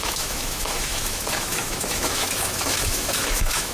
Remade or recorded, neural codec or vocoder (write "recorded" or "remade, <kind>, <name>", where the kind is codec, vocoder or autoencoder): remade, autoencoder, DAC-VAE